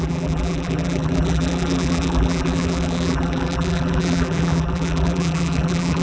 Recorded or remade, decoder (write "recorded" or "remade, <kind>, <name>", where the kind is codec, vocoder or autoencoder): remade, vocoder, BigVGAN v2